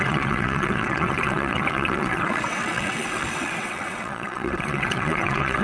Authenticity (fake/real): fake